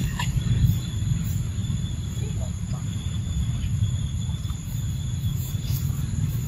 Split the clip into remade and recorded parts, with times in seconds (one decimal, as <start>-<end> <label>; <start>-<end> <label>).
0.0-0.6 remade; 0.6-1.6 recorded; 1.6-4.8 remade; 4.8-5.3 recorded; 5.3-5.9 remade; 5.9-6.5 recorded